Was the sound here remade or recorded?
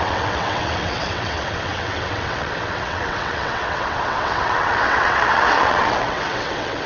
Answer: remade